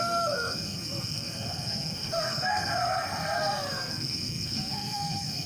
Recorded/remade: remade